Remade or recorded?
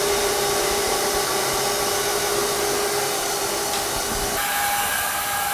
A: recorded